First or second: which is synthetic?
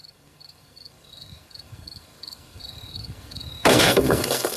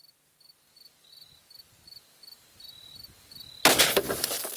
first